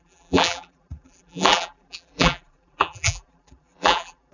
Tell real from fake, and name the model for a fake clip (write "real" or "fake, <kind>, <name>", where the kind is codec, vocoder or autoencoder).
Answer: fake, vocoder, BigVGAN v2